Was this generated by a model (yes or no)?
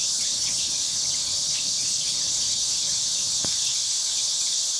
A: yes